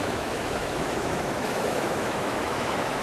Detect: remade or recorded remade